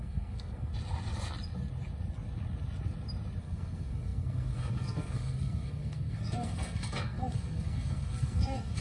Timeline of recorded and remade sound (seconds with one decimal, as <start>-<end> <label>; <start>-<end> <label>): 0.0-0.7 remade; 0.7-3.4 recorded; 3.4-8.8 remade